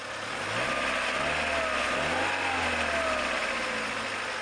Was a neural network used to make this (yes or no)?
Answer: no